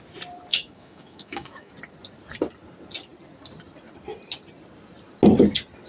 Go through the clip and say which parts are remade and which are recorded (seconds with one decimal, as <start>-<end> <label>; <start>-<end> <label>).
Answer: 0.0-0.5 recorded; 0.5-1.7 remade; 1.7-5.9 recorded